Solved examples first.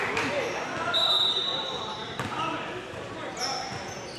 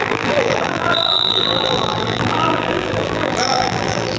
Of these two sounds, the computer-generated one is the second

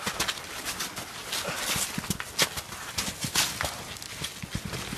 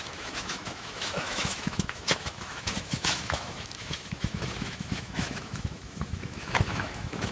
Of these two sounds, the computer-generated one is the second